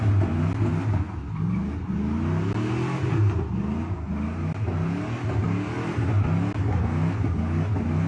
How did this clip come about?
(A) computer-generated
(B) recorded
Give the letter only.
B